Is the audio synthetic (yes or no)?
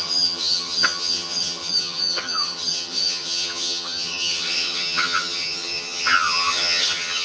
yes